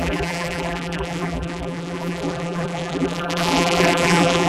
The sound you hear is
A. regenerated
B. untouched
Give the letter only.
A